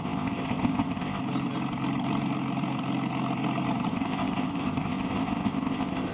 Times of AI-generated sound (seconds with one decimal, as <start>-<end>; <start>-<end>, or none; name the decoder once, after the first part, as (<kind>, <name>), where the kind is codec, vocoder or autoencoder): 0.0-1.2 (codec, ZipCodec); 3.9-6.1